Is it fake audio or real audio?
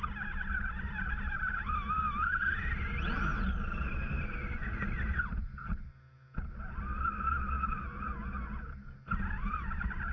real